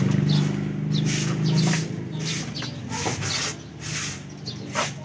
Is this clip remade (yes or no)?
no